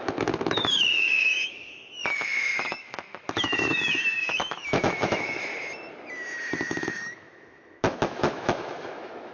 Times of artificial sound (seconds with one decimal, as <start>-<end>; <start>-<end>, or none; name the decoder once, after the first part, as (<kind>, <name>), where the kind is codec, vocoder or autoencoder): 0.0-5.5 (autoencoder, DAC-VAE); 6.7-9.3